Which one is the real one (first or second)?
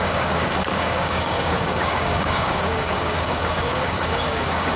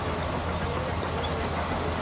second